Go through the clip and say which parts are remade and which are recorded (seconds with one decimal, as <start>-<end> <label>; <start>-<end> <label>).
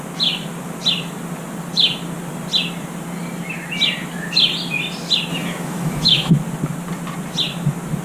0.0-5.3 recorded; 5.3-6.3 remade; 6.3-8.0 recorded